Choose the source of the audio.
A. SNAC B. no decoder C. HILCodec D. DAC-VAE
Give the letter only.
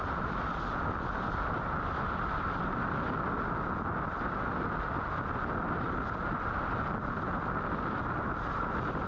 B